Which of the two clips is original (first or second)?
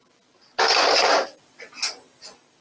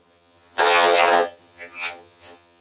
first